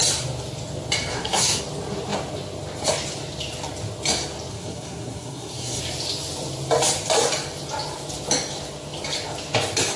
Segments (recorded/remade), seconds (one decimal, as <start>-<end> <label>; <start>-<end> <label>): 0.0-1.1 recorded; 1.1-1.6 remade; 1.6-4.5 recorded; 4.5-5.8 remade; 5.8-10.0 recorded